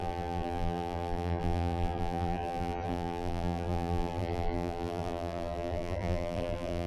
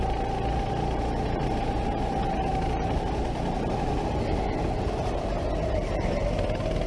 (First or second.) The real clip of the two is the second